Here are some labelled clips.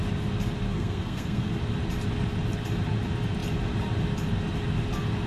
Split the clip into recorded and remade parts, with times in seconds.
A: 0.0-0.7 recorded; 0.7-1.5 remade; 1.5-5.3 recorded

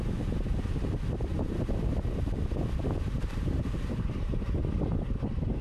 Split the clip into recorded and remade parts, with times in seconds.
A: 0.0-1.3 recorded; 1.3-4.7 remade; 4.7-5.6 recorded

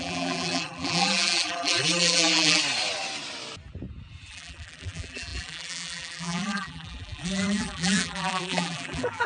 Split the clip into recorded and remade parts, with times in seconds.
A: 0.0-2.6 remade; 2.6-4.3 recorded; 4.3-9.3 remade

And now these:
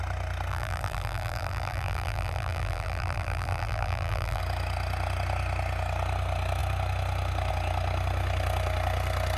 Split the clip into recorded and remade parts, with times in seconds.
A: 0.0-0.5 recorded; 0.5-4.4 remade; 4.4-9.4 recorded